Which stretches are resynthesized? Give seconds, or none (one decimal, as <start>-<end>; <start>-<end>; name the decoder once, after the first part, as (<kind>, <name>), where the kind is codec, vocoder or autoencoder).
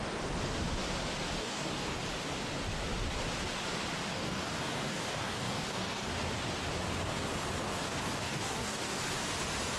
1.4-2.0 (codec, DAC); 4.1-6.1; 7.6-9.0